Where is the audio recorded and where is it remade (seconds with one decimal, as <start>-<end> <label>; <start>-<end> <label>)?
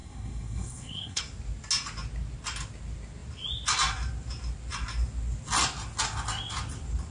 0.0-1.2 remade; 1.2-7.1 recorded